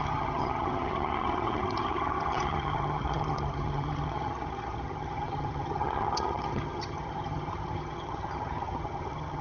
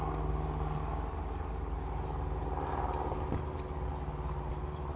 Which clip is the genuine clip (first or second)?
second